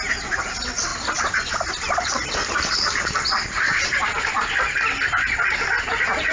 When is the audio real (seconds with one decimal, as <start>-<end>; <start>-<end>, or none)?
0.0-0.9; 3.6-4.1; 5.2-6.3